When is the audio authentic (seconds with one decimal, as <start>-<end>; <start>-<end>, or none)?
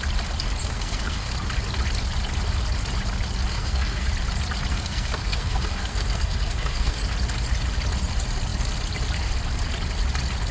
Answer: 0.0-0.6; 1.3-3.5; 4.1-4.7; 7.0-10.5